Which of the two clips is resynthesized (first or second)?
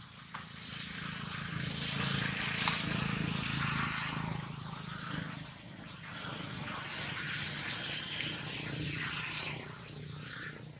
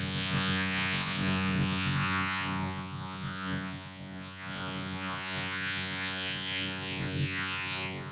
second